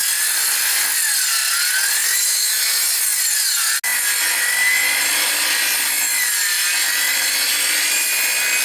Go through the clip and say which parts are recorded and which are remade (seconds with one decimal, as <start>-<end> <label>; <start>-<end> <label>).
0.0-0.8 remade; 0.8-8.6 recorded